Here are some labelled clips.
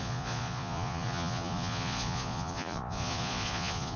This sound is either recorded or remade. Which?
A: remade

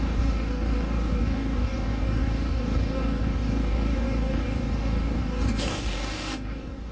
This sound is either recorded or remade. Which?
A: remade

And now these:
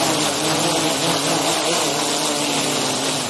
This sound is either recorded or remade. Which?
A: recorded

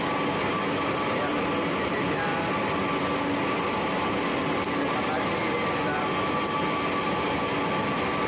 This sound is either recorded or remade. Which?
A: recorded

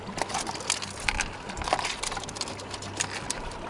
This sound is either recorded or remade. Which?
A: recorded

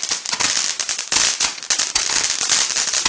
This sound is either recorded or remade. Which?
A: recorded